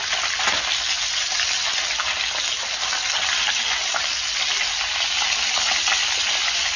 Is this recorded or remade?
recorded